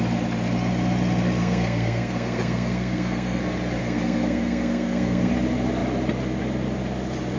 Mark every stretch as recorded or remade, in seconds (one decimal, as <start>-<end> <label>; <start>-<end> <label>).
0.0-1.4 recorded; 1.4-3.4 remade; 3.4-3.8 recorded; 3.8-5.3 remade; 5.3-7.4 recorded